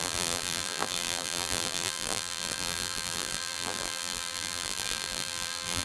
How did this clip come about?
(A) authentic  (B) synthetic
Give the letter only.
B